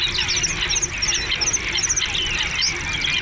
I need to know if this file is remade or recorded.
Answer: recorded